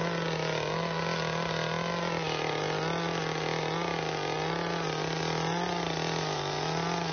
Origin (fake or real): real